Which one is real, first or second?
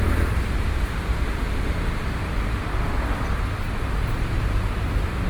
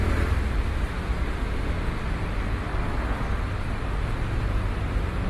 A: second